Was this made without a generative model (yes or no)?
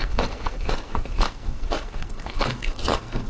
no